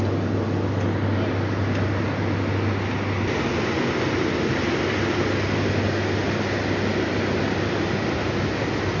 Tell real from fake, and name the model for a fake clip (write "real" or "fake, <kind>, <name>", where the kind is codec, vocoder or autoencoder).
real